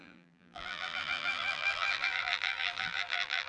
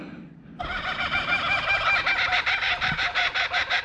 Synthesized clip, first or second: first